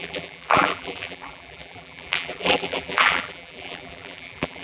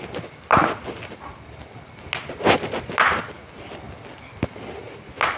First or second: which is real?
second